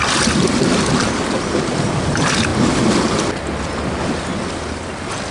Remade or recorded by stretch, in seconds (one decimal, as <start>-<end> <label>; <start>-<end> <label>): 0.0-5.3 recorded